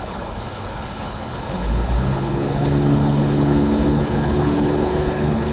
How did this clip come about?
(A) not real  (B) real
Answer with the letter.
A